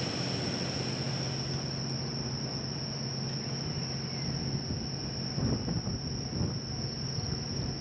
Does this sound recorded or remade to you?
recorded